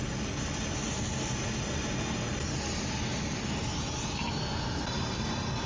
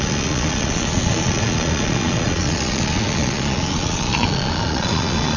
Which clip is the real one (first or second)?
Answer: first